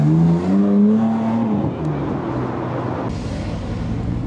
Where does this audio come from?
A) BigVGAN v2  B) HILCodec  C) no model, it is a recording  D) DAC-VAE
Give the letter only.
C